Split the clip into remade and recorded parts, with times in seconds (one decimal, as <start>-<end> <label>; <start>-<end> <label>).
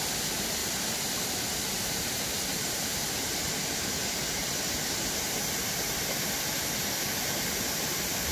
0.0-0.6 remade; 0.6-1.7 recorded; 1.7-2.9 remade; 2.9-3.7 recorded; 3.7-4.4 remade; 4.4-7.2 recorded; 7.2-8.3 remade